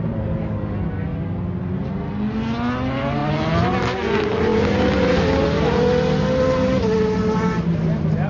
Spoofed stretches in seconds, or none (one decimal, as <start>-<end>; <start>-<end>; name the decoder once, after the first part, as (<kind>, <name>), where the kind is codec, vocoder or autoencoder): none